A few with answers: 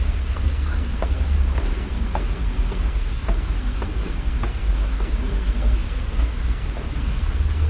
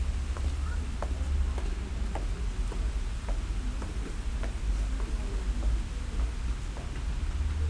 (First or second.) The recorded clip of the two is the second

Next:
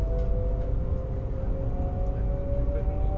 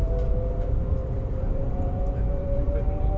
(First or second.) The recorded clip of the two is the first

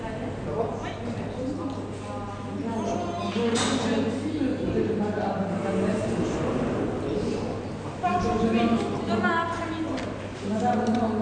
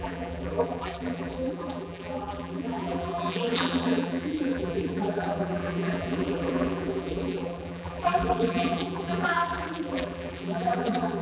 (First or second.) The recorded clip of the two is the first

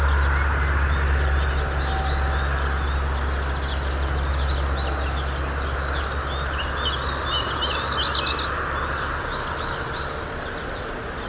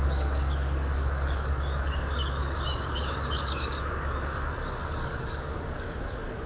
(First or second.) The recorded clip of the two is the first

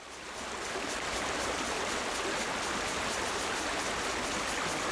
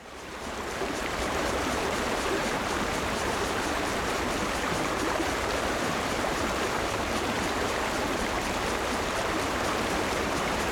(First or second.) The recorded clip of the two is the first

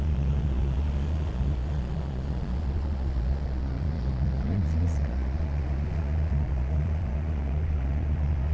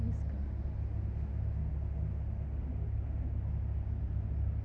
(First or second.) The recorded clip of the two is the second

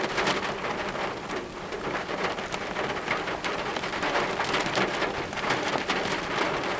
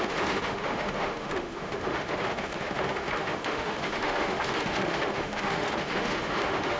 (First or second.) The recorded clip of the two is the first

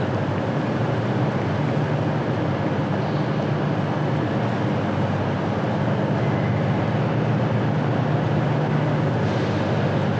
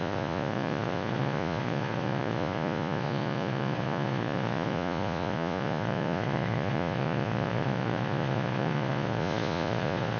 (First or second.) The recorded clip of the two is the first